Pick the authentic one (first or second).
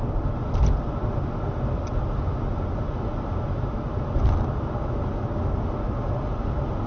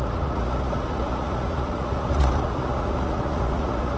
first